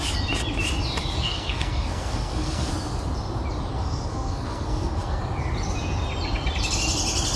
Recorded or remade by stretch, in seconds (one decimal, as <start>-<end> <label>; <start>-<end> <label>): 0.0-1.2 recorded; 1.2-2.7 remade; 2.7-3.7 recorded; 3.7-5.2 remade; 5.2-7.4 recorded